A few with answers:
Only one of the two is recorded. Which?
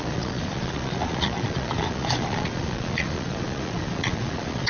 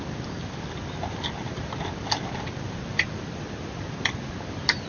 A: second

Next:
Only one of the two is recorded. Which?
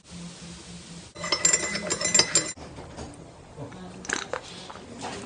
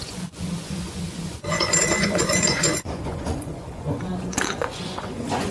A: first